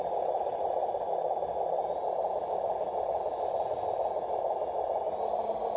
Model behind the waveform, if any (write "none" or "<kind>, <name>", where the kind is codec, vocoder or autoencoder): none